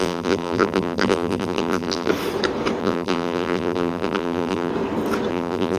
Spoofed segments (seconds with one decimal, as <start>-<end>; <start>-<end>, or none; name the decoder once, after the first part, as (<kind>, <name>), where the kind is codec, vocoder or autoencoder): 0.0-2.1 (vocoder, BigVGAN v2); 2.8-4.7; 5.3-5.8